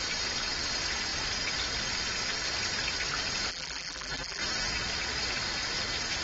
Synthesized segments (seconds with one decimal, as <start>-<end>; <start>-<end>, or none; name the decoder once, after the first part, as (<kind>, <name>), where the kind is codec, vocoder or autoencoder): 3.5-4.4 (vocoder, BigVGAN v2)

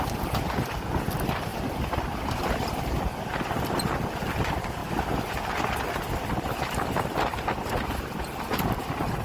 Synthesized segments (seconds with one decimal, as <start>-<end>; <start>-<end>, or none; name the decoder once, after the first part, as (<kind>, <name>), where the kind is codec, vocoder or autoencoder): none

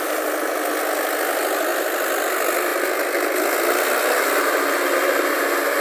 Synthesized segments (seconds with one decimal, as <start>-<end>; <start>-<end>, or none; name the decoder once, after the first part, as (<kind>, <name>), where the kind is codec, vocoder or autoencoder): 1.7-2.3 (vocoder, BigVGAN v2)

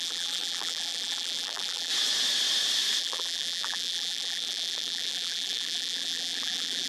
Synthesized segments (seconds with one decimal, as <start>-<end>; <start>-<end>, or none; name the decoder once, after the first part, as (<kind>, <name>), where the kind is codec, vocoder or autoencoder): 0.0-1.9 (vocoder, BigVGAN v2); 3.0-6.9